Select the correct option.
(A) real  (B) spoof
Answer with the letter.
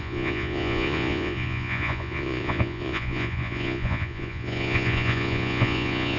B